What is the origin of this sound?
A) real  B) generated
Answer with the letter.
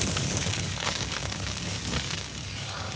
B